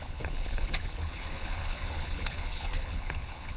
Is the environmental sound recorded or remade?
remade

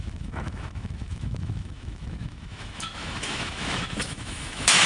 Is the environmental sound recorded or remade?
remade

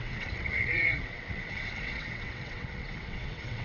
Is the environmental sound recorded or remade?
remade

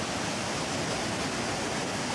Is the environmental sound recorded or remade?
recorded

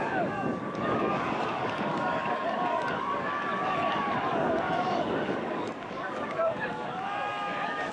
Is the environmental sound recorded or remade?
remade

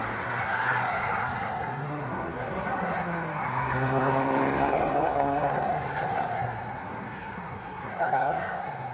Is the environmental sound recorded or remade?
remade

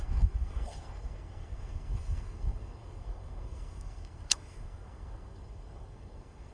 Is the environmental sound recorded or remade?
remade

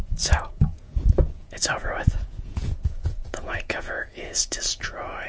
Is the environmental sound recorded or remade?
remade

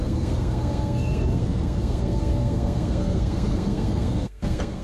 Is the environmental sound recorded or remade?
remade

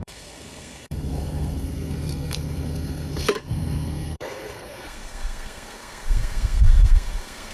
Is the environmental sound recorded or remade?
remade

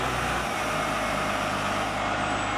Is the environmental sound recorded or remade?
recorded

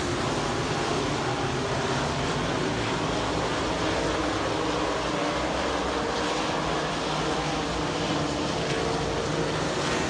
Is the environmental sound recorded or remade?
recorded